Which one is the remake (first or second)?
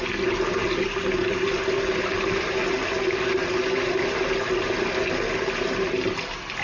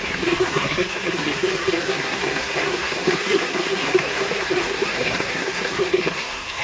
second